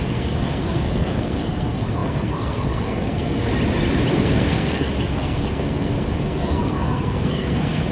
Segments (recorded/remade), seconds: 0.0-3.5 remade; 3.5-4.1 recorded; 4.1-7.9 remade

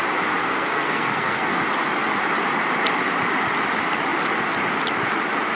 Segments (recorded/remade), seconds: 0.0-0.4 recorded; 0.4-1.6 remade; 1.6-5.5 recorded

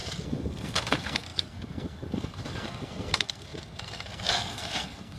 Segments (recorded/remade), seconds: 0.0-5.2 remade

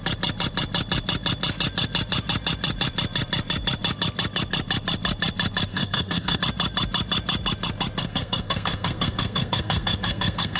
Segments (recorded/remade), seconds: 0.0-5.7 recorded; 5.7-6.4 remade; 6.4-8.0 recorded; 8.0-10.6 remade

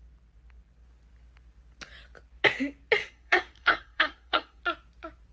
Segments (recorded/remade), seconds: 0.0-3.0 recorded; 3.0-4.6 remade; 4.6-5.3 recorded

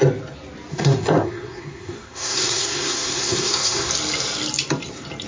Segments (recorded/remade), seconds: 0.0-0.7 recorded; 0.7-3.9 remade; 3.9-5.3 recorded